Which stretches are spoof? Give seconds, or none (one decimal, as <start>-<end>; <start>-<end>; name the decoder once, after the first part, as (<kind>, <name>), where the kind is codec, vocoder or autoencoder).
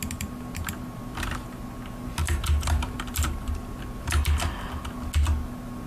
2.2-3.8 (vocoder, BigVGAN v2)